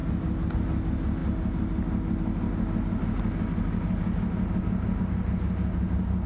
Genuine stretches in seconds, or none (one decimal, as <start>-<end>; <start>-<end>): 0.0-6.3